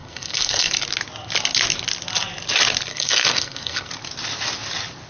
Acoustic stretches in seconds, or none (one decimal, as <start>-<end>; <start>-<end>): 0.7-2.9; 3.9-5.1